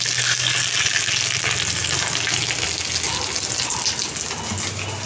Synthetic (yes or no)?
no